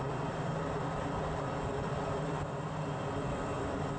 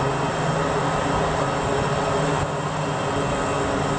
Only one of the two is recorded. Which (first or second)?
second